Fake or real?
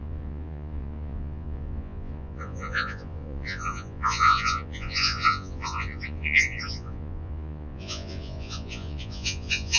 fake